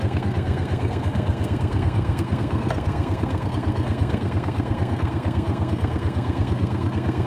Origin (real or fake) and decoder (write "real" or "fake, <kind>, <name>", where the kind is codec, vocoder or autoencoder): fake, codec, SNAC